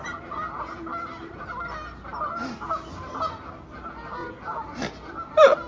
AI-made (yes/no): no